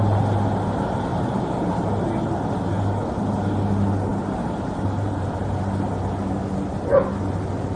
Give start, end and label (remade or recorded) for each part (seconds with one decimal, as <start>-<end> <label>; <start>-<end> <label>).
0.0-1.1 recorded; 1.1-2.1 remade; 2.1-4.1 recorded; 4.1-5.3 remade; 5.3-7.8 recorded